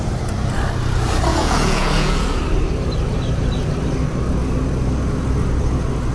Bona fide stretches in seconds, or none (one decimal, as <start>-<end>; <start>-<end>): 0.0-1.3; 2.4-6.1